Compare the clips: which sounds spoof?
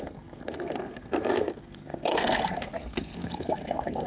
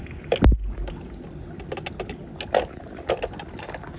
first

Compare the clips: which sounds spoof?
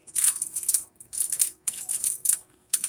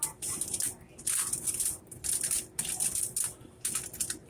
first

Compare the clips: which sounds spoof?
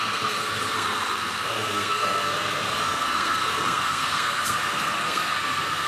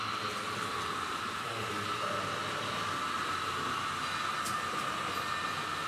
first